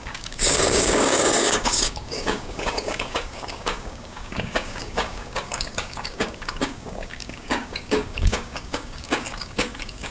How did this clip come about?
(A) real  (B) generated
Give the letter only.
B